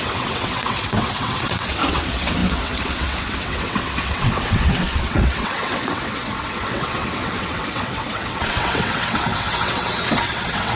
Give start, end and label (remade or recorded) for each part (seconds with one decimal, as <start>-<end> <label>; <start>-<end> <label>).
0.0-10.8 remade